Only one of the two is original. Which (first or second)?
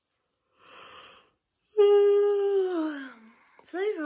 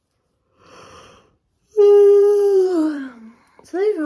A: first